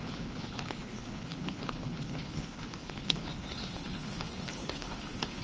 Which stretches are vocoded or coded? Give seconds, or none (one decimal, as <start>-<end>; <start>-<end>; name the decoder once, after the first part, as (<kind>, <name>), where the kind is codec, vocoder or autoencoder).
0.0-5.4 (codec, HILCodec)